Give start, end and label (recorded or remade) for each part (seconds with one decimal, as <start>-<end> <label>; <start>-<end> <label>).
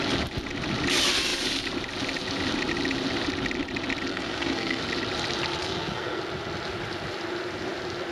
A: 0.0-4.1 recorded; 4.1-4.8 remade; 4.8-5.6 recorded; 5.6-6.2 remade; 6.2-8.1 recorded